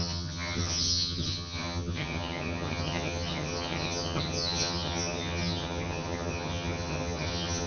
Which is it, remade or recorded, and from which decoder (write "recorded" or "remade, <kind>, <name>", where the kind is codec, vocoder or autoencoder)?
remade, vocoder, HiFi-GAN